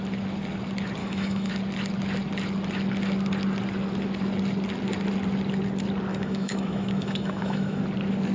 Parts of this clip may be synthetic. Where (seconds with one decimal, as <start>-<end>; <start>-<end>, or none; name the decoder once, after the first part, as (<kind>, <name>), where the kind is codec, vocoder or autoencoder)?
1.0-1.5 (autoencoder, DAC-VAE); 6.1-7.8